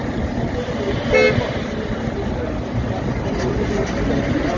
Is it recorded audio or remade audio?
recorded